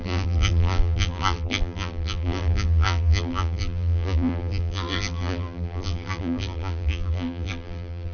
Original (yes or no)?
no